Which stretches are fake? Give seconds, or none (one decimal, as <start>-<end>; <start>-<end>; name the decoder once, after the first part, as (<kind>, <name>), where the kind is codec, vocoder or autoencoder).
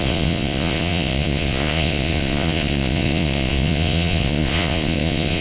0.0-5.4 (vocoder, Vocos)